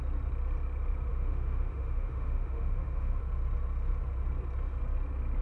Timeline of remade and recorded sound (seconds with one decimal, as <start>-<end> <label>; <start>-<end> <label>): 0.0-1.1 recorded; 1.1-3.2 remade; 3.2-5.4 recorded